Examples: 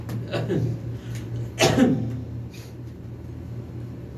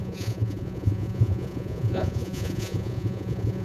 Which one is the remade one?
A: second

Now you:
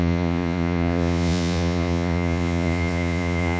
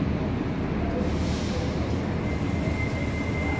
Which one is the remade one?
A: first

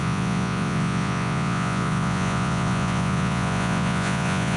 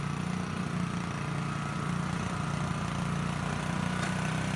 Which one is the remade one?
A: first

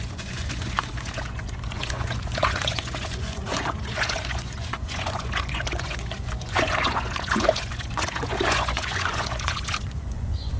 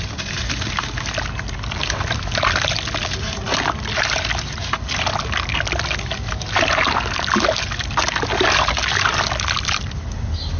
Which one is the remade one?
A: first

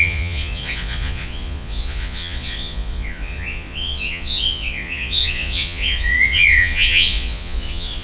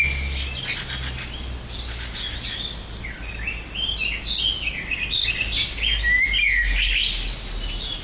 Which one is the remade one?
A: first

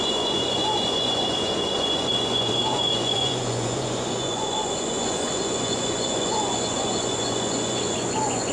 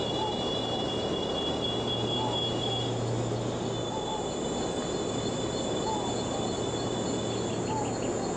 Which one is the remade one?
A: first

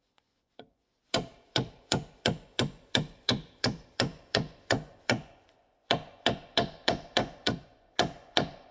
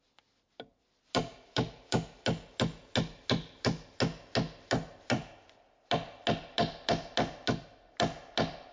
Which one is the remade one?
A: first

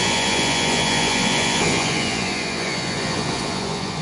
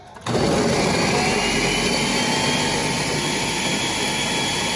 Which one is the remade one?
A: first